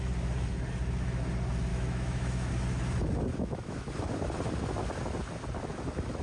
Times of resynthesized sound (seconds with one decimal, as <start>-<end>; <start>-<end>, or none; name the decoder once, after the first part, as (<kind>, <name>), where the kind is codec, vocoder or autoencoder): 1.7-2.5 (autoencoder, DAC-VAE); 3.3-3.9